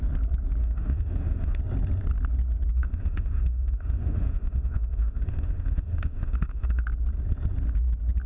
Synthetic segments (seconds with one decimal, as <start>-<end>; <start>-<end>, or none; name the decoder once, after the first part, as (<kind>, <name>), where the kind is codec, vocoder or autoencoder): 0.6-1.6 (autoencoder, DAC-VAE); 2.8-6.8